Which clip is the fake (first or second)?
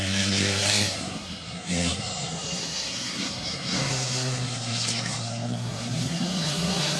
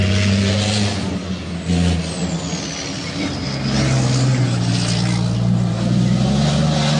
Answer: first